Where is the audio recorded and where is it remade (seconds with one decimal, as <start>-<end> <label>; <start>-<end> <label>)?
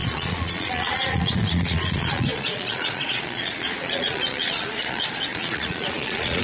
0.0-6.4 remade